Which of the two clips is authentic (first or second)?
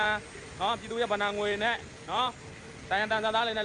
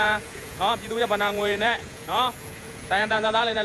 first